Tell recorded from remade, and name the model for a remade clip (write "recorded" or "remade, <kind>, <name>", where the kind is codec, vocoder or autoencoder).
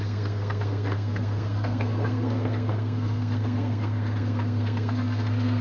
remade, codec, SNAC